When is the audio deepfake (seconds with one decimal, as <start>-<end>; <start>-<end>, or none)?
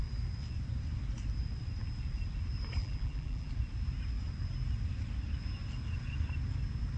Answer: 2.8-3.5